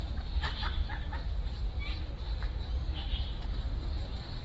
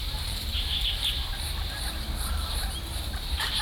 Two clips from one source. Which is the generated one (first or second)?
second